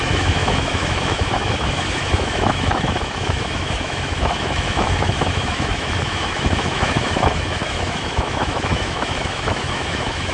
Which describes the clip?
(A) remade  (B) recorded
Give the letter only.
A